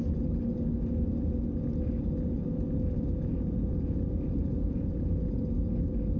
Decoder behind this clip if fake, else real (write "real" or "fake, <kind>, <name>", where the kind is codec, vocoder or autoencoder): real